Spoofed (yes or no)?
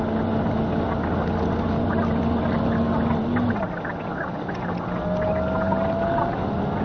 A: no